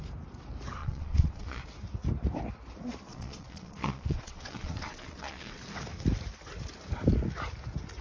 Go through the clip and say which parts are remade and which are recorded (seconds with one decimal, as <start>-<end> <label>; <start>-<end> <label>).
0.0-0.8 recorded; 0.8-1.6 remade; 1.6-3.1 recorded; 3.1-5.6 remade; 5.6-8.0 recorded